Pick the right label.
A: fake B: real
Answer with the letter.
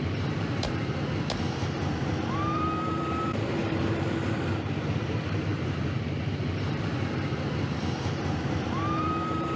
A